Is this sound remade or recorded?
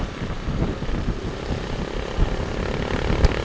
recorded